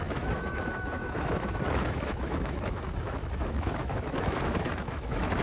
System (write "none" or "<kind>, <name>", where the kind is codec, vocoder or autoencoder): autoencoder, DAC-VAE